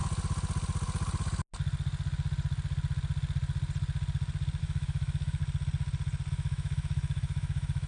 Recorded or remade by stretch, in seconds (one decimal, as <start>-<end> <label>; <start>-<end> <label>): 0.0-4.6 recorded; 4.6-5.4 remade; 5.4-6.3 recorded; 6.3-7.9 remade